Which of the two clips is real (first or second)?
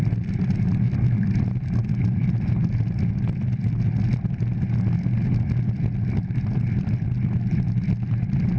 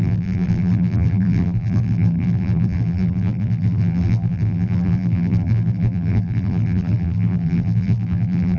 first